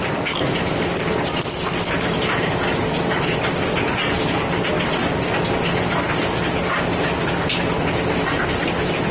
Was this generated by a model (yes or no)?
no